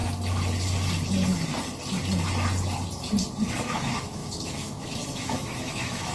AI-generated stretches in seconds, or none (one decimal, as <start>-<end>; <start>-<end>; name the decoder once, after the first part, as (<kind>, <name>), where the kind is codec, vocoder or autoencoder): 3.5-6.1 (autoencoder, DAC-VAE)